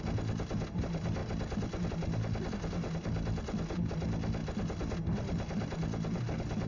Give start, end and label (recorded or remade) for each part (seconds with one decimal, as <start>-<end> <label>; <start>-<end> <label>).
0.0-6.7 recorded